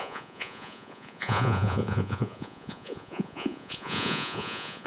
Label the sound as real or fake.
fake